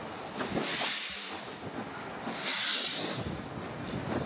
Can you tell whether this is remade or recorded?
recorded